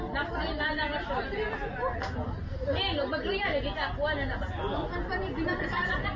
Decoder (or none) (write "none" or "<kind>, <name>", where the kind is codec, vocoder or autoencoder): none